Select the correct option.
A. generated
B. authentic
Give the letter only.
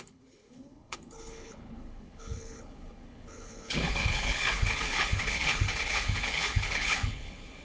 A